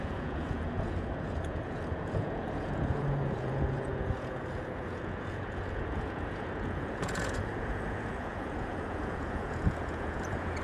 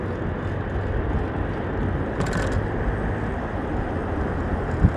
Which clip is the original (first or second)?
second